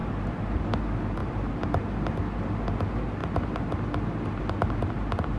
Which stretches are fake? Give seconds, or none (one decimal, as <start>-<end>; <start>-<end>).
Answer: 0.0-0.6; 1.2-1.8